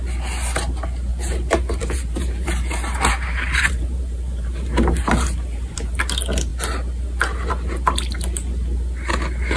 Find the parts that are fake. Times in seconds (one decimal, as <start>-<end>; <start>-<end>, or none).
1.1-6.0